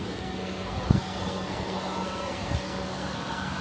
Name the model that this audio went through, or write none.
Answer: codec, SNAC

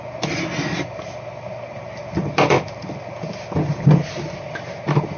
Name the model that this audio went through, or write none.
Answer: none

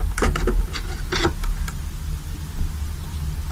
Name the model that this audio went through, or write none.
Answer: none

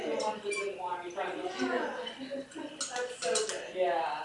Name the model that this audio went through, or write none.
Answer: none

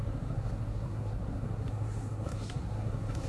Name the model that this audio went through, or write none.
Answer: codec, SNAC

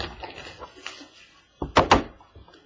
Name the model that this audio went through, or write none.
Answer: none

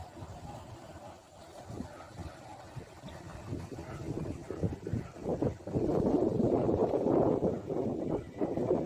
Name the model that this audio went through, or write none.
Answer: none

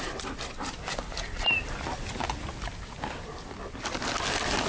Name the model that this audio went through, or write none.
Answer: none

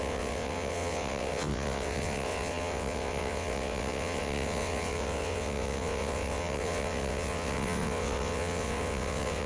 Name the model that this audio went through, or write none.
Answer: vocoder, WaveNeXt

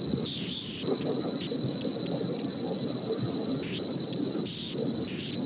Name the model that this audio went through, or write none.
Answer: none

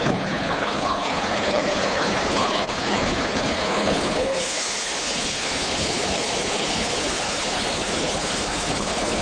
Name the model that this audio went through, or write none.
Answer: codec, HILCodec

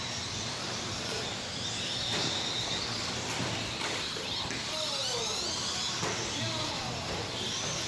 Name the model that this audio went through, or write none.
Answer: none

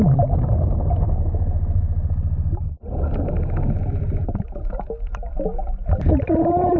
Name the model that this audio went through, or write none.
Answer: none